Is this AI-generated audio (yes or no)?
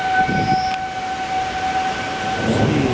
no